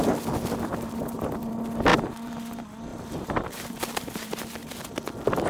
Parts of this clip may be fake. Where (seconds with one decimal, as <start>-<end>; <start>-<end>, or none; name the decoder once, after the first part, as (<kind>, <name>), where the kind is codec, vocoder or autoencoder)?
0.7-1.5 (vocoder, BigVGAN v2); 1.9-2.4; 2.9-4.3